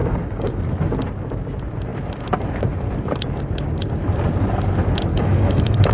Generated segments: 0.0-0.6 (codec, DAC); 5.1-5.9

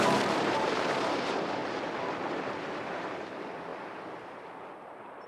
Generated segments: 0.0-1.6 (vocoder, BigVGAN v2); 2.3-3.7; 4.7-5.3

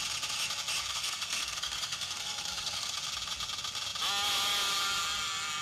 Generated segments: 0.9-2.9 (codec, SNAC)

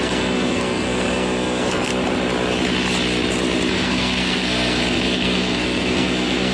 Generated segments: 0.0-1.9 (codec, SNAC); 3.7-6.5

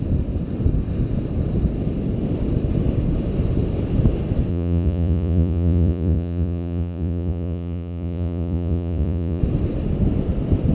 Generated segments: 4.5-9.4 (vocoder, Vocos)

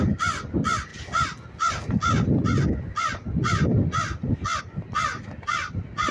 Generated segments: none

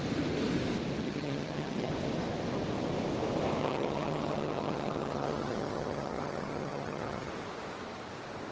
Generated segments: 1.0-1.9 (vocoder, HiFi-GAN); 3.6-7.3

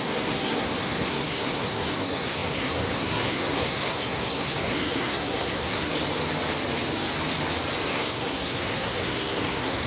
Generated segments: 0.0-5.9 (codec, SNAC); 7.9-9.9